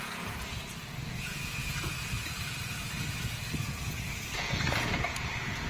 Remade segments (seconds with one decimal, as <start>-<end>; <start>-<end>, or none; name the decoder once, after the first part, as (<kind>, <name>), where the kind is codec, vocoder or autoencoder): 0.0-5.7 (vocoder, Vocos)

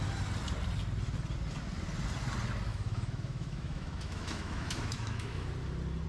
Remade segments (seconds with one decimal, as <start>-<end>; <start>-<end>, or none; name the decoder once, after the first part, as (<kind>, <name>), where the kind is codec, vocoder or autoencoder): 2.7-5.5 (autoencoder, DAC-VAE)

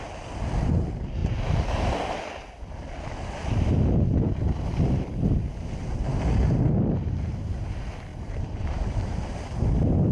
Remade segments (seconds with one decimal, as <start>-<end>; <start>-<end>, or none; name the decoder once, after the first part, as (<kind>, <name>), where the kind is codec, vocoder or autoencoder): 8.1-9.4 (vocoder, BigVGAN v2)

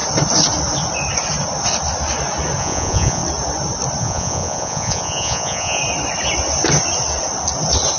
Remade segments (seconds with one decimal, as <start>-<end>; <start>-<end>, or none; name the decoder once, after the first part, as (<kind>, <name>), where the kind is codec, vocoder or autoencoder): 2.6-3.2 (vocoder, Vocos); 4.0-5.8

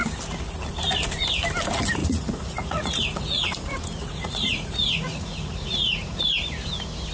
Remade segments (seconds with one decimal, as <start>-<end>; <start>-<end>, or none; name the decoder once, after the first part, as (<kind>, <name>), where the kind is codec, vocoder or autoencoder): 2.0-6.2 (vocoder, Vocos)

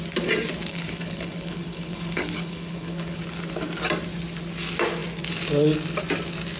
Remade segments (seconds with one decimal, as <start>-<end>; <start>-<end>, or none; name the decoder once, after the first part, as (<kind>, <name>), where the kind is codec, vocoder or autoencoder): 0.7-3.2 (codec, HILCodec)

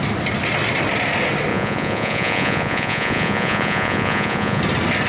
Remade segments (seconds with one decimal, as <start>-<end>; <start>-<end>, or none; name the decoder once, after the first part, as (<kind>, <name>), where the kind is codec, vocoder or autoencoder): 1.5-4.6 (vocoder, Vocos)